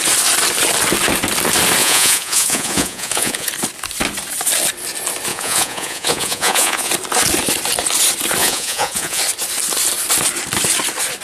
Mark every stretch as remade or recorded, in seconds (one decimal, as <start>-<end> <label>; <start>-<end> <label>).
0.0-1.8 recorded; 1.8-3.5 remade; 3.5-5.3 recorded; 5.3-6.9 remade; 6.9-8.4 recorded; 8.4-9.2 remade; 9.2-11.2 recorded